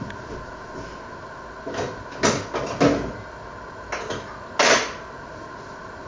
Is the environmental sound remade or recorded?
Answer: recorded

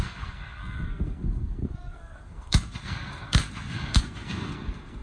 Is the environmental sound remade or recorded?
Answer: remade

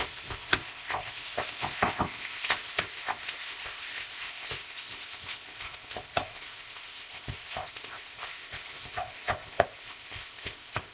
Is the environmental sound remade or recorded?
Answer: remade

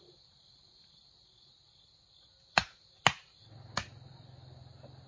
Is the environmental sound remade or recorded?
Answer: recorded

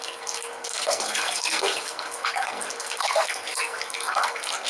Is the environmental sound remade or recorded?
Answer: remade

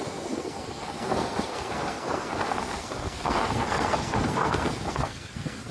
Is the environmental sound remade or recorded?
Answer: remade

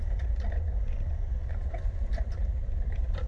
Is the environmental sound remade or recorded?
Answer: remade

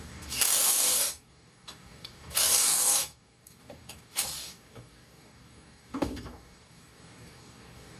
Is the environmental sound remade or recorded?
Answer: remade